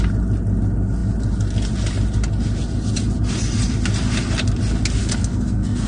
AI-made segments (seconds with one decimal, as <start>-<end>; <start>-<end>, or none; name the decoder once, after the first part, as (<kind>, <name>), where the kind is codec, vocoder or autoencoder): 5.0-5.9 (codec, SNAC)

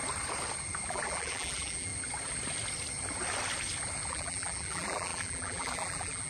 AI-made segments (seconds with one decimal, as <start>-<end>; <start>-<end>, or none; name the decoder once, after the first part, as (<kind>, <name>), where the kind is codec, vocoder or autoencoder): 0.9-1.9 (vocoder, BigVGAN v2); 4.1-6.3

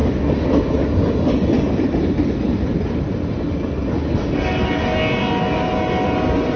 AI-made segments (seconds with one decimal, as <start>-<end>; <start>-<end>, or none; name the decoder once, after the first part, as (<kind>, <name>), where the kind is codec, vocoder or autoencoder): none

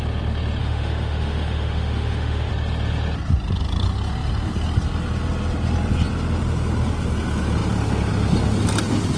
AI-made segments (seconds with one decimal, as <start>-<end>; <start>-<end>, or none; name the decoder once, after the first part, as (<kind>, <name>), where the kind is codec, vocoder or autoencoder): 0.6-2.5 (autoencoder, DAC-VAE)

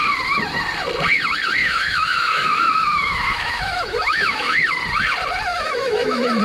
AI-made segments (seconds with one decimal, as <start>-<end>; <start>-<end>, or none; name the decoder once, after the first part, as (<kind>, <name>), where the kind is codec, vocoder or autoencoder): 1.6-4.6 (autoencoder, DAC-VAE); 5.5-6.4